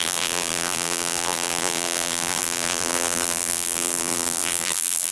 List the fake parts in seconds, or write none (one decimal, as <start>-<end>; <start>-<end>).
0.0-5.1